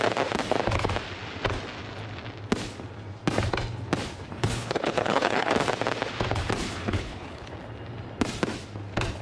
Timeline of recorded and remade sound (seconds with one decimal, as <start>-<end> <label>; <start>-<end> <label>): 0.0-4.3 recorded; 4.3-5.5 remade; 5.5-6.7 recorded; 6.7-7.5 remade; 7.5-9.2 recorded